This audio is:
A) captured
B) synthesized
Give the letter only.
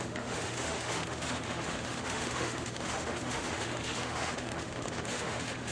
B